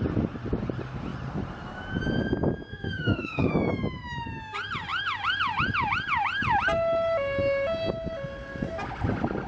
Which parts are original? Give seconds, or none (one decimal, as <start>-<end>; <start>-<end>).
0.0-2.7; 3.5-9.5